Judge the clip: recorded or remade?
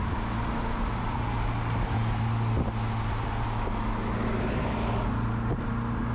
recorded